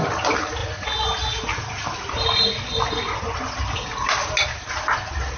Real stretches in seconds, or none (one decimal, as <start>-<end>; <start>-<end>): 0.0-5.4